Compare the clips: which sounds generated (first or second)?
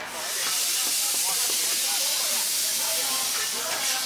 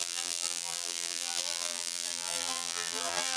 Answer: second